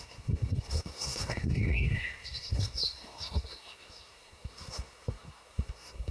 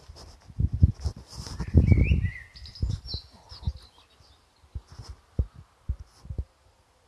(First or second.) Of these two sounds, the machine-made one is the first